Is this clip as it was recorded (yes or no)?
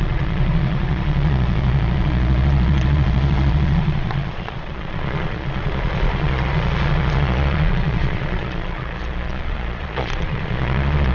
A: no